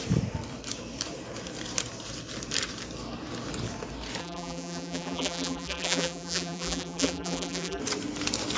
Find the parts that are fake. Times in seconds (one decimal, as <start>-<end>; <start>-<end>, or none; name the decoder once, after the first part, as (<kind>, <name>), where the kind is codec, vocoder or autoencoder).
4.2-7.8 (vocoder, BigVGAN v2)